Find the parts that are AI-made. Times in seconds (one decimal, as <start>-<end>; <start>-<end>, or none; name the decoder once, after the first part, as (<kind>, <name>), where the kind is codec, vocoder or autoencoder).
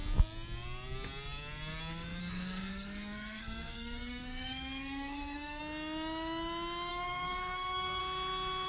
2.2-5.6 (codec, SNAC); 6.9-8.0